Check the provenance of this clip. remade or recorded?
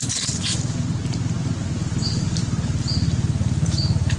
recorded